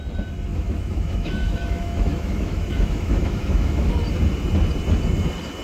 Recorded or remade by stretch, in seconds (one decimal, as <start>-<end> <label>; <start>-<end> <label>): 0.0-0.5 recorded; 0.5-3.9 remade; 3.9-5.6 recorded